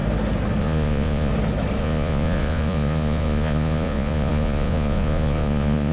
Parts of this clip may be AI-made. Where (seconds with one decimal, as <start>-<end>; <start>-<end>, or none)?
0.6-1.3; 1.8-5.9